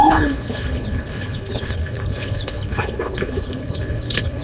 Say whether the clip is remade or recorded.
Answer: remade